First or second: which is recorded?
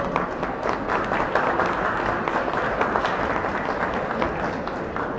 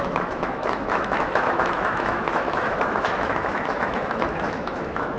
first